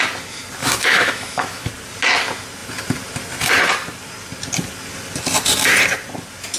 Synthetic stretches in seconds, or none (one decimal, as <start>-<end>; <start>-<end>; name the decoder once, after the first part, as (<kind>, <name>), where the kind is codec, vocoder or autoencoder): 0.6-1.7 (autoencoder, DAC-VAE)